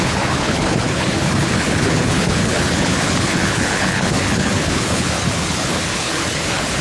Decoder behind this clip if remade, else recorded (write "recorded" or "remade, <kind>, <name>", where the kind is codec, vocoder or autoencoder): remade, codec, HILCodec